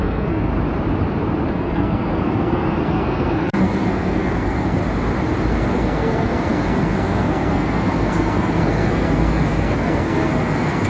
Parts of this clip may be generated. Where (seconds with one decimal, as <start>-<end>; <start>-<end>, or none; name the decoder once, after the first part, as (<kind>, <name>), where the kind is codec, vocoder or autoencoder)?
0.0-0.5 (codec, SNAC); 1.5-4.8; 5.5-10.9